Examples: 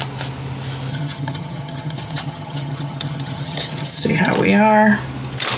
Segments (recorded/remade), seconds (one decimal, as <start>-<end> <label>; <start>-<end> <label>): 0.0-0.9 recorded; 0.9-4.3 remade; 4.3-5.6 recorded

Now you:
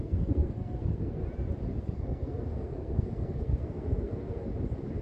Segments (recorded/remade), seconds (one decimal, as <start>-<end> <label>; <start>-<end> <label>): 0.0-1.2 remade; 1.2-1.8 recorded; 1.8-4.5 remade; 4.5-5.0 recorded

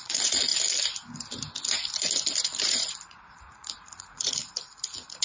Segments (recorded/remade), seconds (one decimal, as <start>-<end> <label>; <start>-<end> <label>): 0.0-0.5 remade; 0.5-2.6 recorded; 2.6-4.4 remade; 4.4-5.2 recorded

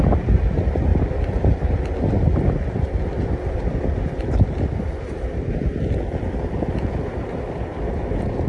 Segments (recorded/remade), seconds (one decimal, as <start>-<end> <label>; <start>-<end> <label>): 0.0-0.9 recorded; 0.9-5.7 remade; 5.7-8.5 recorded